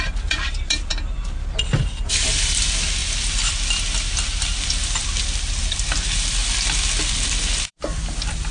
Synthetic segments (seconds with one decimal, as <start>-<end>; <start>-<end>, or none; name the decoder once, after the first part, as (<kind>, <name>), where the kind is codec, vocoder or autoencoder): 0.0-6.4 (vocoder, BigVGAN v2); 7.1-8.5